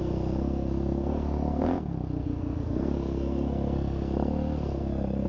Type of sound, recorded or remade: remade